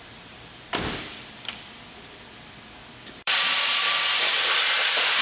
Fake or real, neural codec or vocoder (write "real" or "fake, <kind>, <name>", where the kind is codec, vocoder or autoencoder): fake, vocoder, BigVGAN v2